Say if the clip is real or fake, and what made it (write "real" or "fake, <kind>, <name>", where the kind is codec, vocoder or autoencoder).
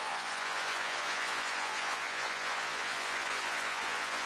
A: fake, vocoder, Vocos